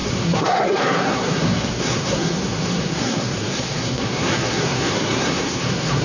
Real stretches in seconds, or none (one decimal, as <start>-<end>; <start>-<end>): none